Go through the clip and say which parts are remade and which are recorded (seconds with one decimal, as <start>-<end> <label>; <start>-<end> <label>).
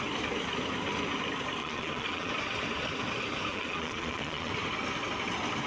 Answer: 0.0-1.6 recorded; 1.6-2.3 remade; 2.3-3.5 recorded; 3.5-4.5 remade; 4.5-5.7 recorded